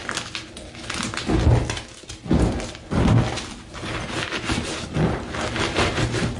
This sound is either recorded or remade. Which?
recorded